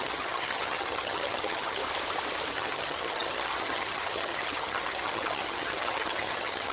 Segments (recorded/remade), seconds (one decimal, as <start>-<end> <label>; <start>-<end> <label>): 0.0-1.8 remade; 1.8-2.5 recorded; 2.5-6.7 remade